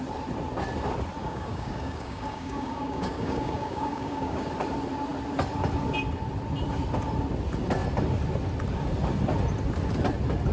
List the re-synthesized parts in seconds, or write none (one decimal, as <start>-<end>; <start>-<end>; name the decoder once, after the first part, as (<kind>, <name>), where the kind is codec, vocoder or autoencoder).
1.2-4.5 (codec, DAC)